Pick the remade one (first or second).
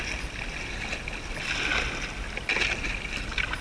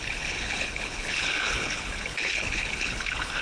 second